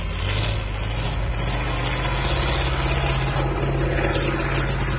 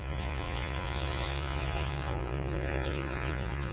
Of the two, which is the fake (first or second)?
second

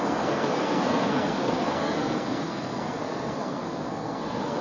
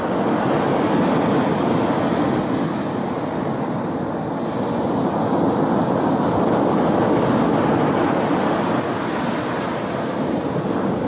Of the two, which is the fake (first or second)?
first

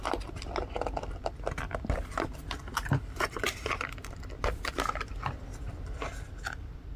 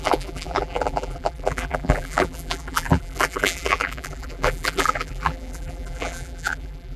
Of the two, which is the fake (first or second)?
second